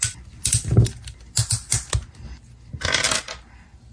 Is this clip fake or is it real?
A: real